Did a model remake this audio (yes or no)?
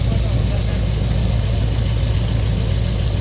no